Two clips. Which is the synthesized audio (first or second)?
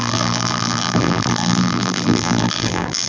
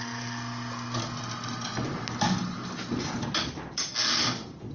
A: first